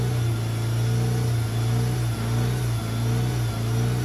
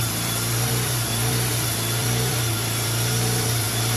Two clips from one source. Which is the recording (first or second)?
first